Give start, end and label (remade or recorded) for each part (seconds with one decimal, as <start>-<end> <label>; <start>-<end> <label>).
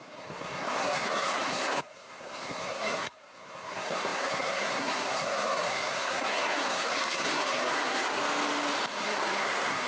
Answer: 0.0-8.2 remade; 8.2-8.9 recorded; 8.9-9.9 remade